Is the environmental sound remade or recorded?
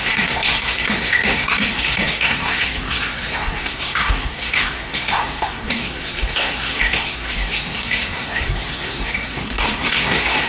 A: remade